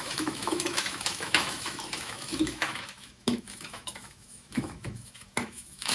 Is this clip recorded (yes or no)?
no